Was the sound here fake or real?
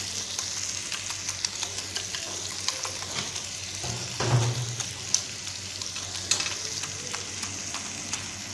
real